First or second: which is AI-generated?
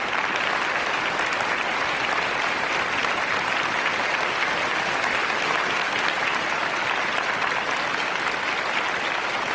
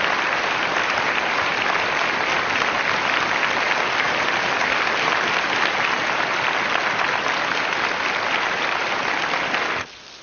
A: first